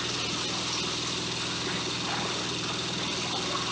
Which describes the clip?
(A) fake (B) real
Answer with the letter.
B